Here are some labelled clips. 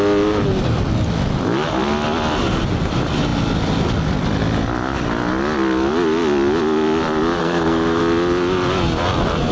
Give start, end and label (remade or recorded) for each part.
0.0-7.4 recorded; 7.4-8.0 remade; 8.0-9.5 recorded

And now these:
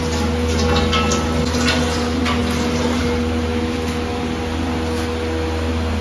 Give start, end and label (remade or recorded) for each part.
0.0-6.0 recorded

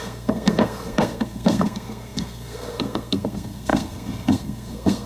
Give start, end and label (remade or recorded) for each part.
0.0-5.1 remade